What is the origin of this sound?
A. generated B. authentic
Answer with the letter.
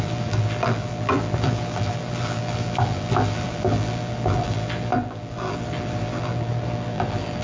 A